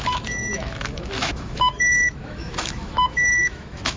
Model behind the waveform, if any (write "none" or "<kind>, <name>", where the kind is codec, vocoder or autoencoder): autoencoder, DAC-VAE